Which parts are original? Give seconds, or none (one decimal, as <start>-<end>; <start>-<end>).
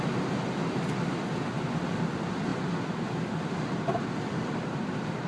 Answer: 0.0-5.3